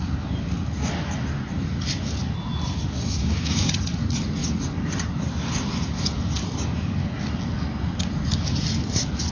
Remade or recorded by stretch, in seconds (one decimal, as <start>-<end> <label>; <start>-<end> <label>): 0.0-3.2 recorded; 3.2-3.7 remade; 3.7-9.3 recorded